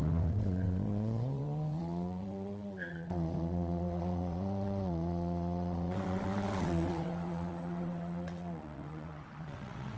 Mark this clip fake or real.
fake